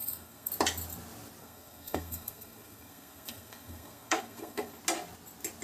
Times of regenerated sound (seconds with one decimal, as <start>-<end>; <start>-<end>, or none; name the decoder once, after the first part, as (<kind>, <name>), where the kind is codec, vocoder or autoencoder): 0.0-0.5 (codec, SNAC); 1.4-4.8